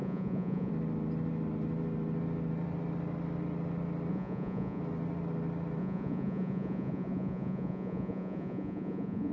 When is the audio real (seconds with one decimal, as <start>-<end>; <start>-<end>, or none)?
0.7-4.1; 4.8-5.8